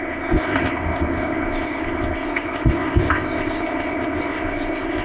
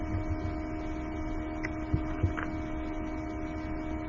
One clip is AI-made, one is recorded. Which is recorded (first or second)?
second